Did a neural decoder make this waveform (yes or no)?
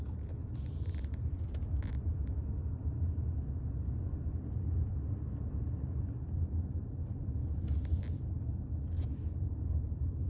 no